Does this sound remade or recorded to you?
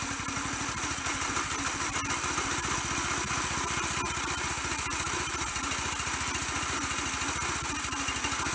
recorded